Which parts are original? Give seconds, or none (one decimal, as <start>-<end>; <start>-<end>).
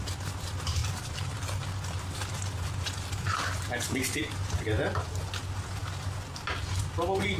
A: 0.0-0.8; 5.2-5.8; 6.7-7.4